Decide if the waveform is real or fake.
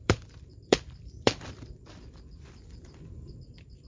fake